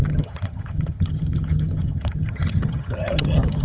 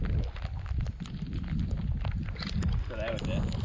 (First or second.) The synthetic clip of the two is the first